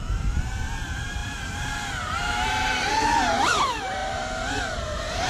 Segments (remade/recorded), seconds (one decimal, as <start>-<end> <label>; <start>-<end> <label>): 0.0-5.3 remade

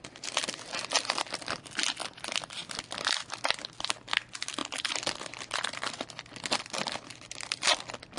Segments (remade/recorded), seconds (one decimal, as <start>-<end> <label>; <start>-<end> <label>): 0.0-0.7 recorded; 0.7-1.4 remade; 1.4-2.0 recorded; 2.0-3.6 remade; 3.6-4.6 recorded; 4.6-8.2 remade

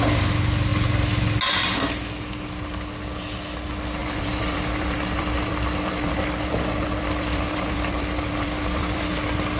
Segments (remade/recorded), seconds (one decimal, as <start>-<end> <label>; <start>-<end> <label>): 0.0-4.0 recorded; 4.0-9.1 remade; 9.1-9.6 recorded

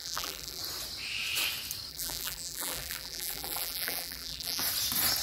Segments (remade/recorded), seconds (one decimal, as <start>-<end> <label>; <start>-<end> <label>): 0.0-0.6 remade; 0.6-1.9 recorded; 1.9-4.6 remade; 4.6-5.2 recorded

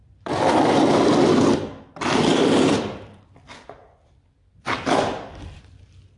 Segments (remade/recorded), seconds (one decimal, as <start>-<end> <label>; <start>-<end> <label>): 0.0-2.3 recorded; 2.3-5.8 remade; 5.8-6.2 recorded